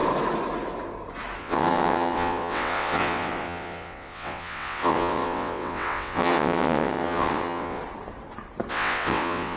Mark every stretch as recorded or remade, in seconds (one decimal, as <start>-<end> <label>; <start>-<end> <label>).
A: 0.0-1.4 recorded; 1.4-7.8 remade; 7.8-8.7 recorded; 8.7-9.6 remade